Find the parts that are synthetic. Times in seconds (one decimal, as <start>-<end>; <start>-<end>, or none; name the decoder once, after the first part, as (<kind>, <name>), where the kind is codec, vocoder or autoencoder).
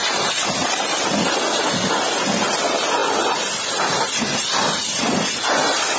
none